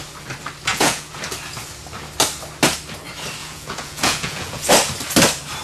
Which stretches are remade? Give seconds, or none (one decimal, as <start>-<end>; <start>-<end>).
0.7-1.2; 3.4-4.7